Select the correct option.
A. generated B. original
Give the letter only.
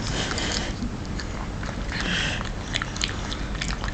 B